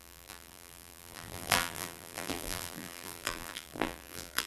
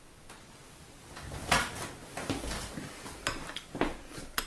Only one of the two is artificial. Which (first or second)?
first